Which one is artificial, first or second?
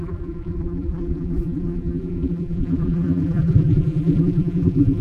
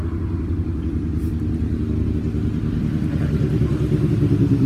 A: first